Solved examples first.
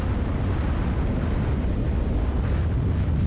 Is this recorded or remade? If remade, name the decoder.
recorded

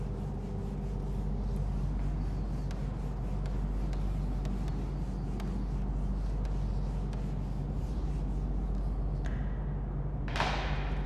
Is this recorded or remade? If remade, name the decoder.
recorded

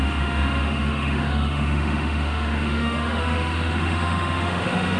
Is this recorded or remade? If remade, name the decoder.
remade, autoencoder, DAC-VAE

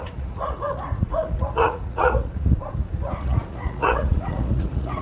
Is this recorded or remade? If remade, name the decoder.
remade, vocoder, Vocos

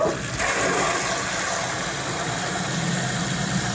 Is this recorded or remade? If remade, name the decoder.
recorded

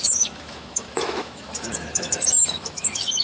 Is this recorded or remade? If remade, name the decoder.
remade, autoencoder, DAC-VAE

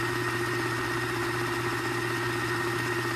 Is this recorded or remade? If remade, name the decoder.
recorded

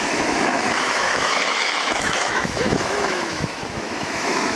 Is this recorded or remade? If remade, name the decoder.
remade, autoencoder, DAC-VAE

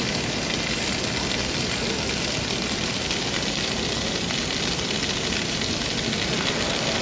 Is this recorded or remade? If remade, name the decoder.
recorded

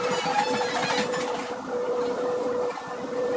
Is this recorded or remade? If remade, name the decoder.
recorded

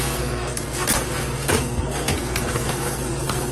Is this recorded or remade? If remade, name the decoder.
remade, codec, SNAC